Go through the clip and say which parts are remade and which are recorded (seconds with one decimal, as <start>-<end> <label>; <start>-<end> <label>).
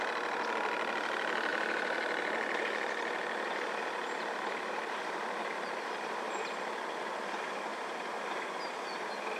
0.0-1.5 recorded; 1.5-5.0 remade; 5.0-7.7 recorded; 7.7-8.7 remade; 8.7-9.4 recorded